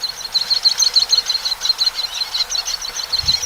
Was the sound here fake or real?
real